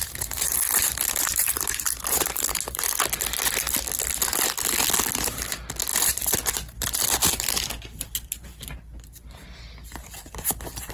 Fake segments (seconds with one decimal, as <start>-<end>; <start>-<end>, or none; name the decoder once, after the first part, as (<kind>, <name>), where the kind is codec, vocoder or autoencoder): 0.0-3.0 (vocoder, BigVGAN v2); 5.9-10.9